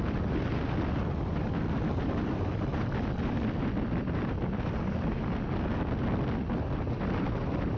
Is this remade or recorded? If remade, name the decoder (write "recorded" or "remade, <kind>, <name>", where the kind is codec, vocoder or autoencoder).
recorded